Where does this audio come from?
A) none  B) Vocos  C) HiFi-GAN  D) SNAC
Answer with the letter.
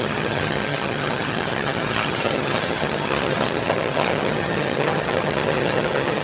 C